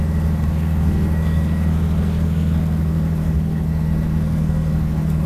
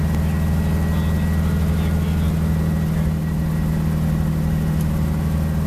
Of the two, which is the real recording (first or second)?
second